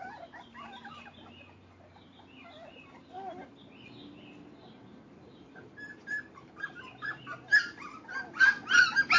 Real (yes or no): no